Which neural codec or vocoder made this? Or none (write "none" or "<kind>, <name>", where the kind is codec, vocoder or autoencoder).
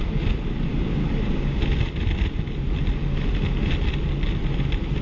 none